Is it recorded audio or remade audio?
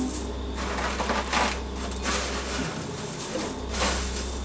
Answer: recorded